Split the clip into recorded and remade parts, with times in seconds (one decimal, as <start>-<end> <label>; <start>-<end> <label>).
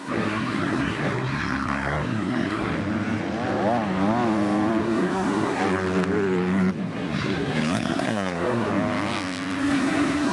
0.0-2.7 remade; 2.7-4.8 recorded; 4.8-5.6 remade; 5.6-6.8 recorded; 6.8-8.7 remade; 8.7-9.6 recorded; 9.6-10.3 remade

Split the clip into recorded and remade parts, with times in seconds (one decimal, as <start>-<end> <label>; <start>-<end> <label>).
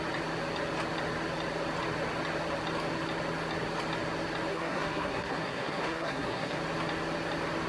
0.0-4.5 recorded; 4.5-6.6 remade; 6.6-7.7 recorded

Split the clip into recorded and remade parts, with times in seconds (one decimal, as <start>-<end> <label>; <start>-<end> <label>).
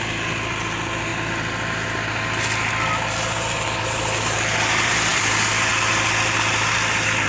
0.0-5.1 recorded; 5.1-5.7 remade; 5.7-7.3 recorded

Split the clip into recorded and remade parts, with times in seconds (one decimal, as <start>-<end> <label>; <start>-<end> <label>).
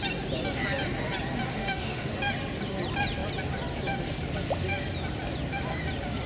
0.0-1.5 recorded; 1.5-2.1 remade; 2.1-6.3 recorded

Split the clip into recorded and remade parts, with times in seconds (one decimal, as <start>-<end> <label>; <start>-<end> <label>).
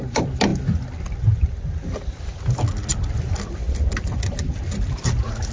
0.0-5.5 recorded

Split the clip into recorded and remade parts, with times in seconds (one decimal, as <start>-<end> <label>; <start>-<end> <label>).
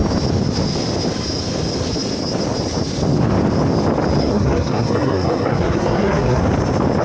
0.0-4.2 recorded; 4.2-6.4 remade; 6.4-7.0 recorded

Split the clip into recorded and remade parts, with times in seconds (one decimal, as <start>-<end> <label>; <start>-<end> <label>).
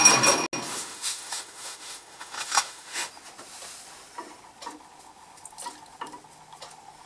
0.0-0.7 recorded; 0.7-3.1 remade; 3.1-7.1 recorded